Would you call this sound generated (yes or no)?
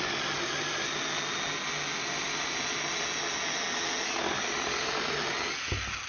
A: no